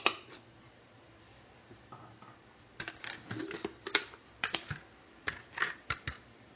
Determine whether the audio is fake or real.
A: fake